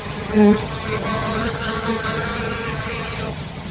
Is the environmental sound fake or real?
fake